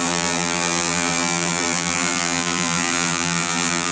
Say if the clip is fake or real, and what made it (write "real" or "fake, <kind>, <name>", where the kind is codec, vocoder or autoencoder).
fake, vocoder, BigVGAN v2